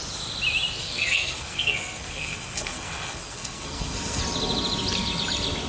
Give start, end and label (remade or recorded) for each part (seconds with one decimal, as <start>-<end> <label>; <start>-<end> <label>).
0.0-0.8 recorded; 0.8-4.2 remade; 4.2-5.7 recorded